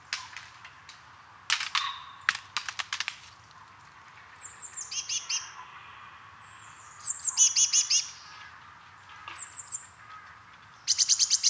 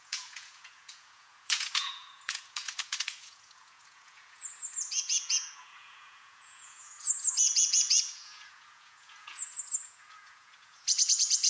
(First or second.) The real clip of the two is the first